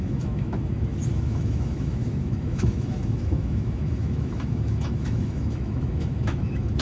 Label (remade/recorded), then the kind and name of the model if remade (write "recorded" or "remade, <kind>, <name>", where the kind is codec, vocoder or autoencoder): remade, autoencoder, DAC-VAE